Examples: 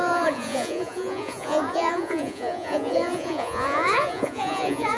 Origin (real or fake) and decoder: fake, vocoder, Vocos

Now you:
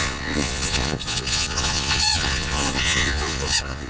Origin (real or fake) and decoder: fake, vocoder, Vocos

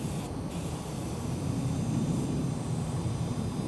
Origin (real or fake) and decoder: real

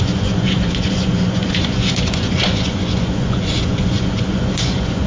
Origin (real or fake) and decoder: fake, vocoder, Vocos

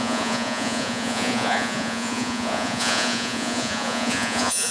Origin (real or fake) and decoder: fake, vocoder, Vocos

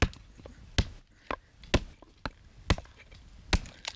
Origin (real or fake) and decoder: real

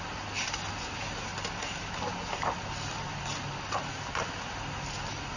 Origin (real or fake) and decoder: real